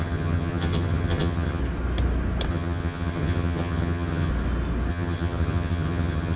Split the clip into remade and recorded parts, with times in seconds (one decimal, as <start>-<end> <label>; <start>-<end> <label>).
0.0-1.6 remade; 1.6-2.5 recorded; 2.5-4.3 remade; 4.3-4.9 recorded; 4.9-6.4 remade